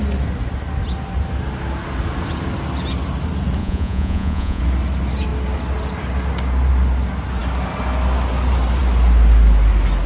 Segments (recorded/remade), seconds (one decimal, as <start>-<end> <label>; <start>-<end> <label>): 0.0-3.6 recorded; 3.6-4.6 remade; 4.6-10.1 recorded